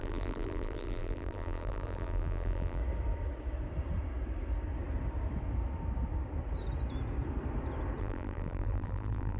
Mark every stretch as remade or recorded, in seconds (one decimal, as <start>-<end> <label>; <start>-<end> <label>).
0.0-2.8 remade; 2.8-8.0 recorded; 8.0-9.4 remade